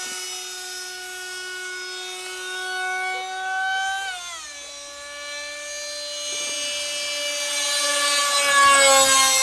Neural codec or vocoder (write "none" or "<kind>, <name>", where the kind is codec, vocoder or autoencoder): none